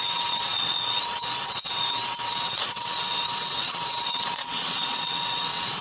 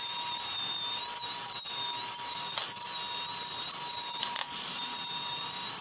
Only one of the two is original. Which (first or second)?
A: second